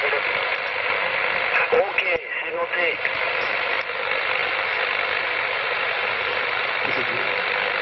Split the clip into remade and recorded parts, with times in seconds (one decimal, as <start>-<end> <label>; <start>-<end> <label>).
0.0-7.8 recorded